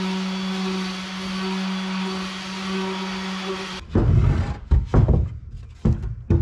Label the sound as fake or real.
real